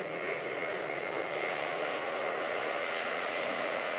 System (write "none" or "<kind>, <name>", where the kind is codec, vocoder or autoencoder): vocoder, Vocos